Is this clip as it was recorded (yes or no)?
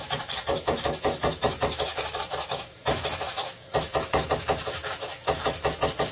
no